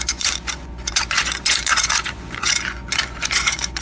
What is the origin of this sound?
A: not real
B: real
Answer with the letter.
A